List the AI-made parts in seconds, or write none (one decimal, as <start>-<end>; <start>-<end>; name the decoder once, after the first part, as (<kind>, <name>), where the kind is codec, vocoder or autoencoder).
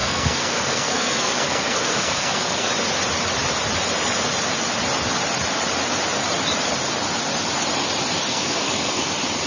0.0-2.7 (codec, SNAC); 8.3-9.1